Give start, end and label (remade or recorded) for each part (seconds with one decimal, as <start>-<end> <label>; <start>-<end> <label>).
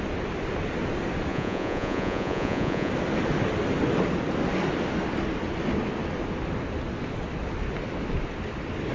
0.0-1.3 recorded; 1.3-2.9 remade; 2.9-8.9 recorded